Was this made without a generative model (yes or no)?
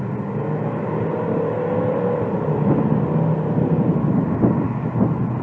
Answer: yes